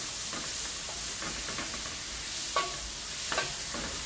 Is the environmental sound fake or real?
real